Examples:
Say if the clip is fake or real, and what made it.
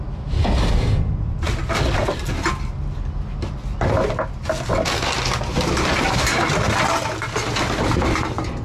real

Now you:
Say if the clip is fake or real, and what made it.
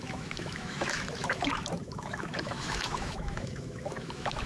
fake, autoencoder, DAC-VAE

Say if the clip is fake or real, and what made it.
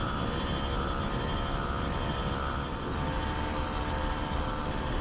real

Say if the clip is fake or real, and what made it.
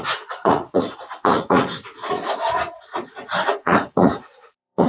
fake, vocoder, Vocos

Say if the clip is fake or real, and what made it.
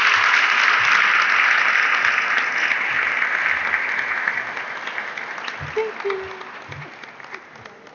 real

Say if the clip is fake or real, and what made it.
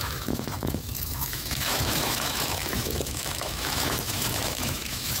fake, autoencoder, DAC-VAE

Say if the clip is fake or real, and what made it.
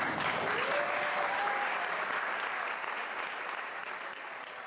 real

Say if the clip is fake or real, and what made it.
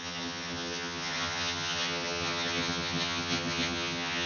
fake, vocoder, HiFi-GAN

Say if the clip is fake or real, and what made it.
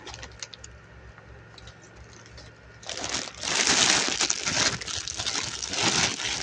real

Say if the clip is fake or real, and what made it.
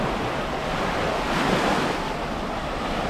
real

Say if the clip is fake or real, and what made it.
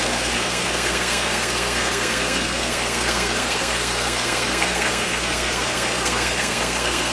fake, codec, SNAC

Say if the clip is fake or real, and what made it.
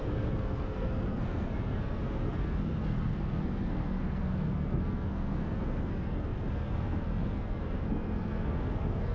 fake, codec, SNAC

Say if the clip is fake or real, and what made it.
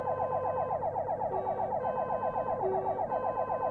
real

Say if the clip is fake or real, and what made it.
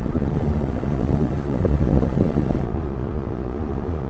fake, vocoder, Vocos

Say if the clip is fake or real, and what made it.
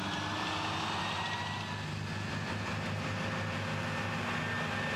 real